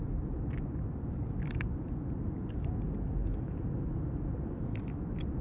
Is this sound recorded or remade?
recorded